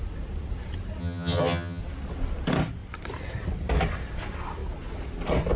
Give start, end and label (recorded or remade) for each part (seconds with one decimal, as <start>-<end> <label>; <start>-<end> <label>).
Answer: 0.0-1.0 recorded; 1.0-1.8 remade; 1.8-5.6 recorded